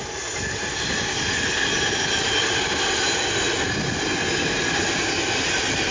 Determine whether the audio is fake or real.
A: real